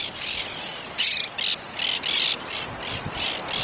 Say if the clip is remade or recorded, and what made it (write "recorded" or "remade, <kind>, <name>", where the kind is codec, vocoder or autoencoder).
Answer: recorded